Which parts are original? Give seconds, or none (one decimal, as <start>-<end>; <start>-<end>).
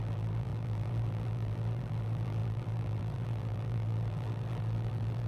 none